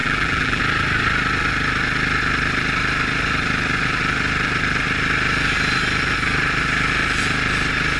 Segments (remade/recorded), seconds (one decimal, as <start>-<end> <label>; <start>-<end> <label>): 0.0-0.6 remade; 0.6-8.0 recorded